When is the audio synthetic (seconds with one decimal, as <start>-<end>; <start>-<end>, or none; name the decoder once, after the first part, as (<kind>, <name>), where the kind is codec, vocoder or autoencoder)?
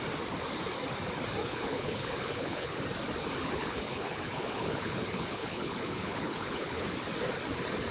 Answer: 1.4-2.8 (codec, HILCodec); 3.4-6.9